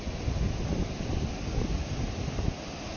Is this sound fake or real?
real